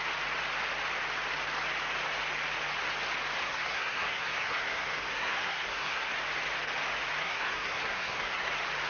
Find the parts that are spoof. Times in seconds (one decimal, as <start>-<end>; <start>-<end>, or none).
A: 3.4-6.1; 7.2-8.5